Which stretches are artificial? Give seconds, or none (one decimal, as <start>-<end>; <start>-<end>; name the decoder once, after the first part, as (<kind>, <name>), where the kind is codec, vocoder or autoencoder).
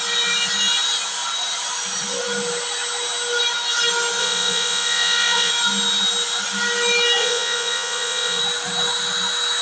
4.2-5.5 (vocoder, Vocos); 7.2-8.4